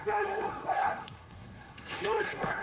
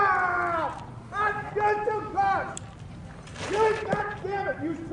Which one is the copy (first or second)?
first